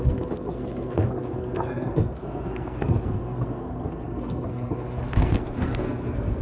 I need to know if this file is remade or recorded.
remade